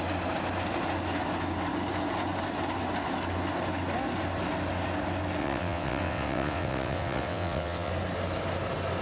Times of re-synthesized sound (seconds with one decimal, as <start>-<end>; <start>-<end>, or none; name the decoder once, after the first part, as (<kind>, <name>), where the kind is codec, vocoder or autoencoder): 5.4-7.9 (vocoder, WaveNeXt)